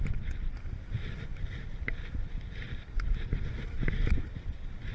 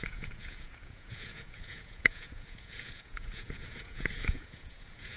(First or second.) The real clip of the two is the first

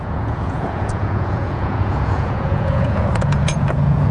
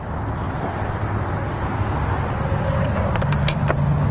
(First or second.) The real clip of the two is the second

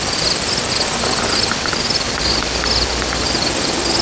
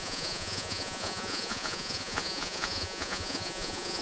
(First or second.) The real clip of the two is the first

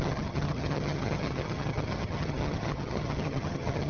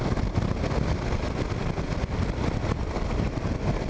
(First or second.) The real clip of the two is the second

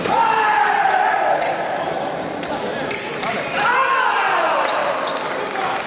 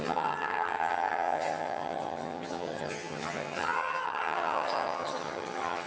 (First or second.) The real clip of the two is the first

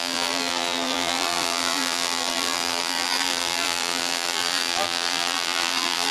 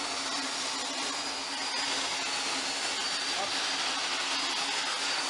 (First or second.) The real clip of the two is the second